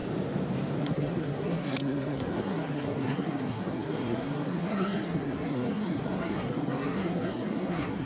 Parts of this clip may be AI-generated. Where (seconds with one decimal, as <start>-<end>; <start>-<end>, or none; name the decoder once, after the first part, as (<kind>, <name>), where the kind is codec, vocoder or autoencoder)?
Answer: 0.8-8.1 (codec, SNAC)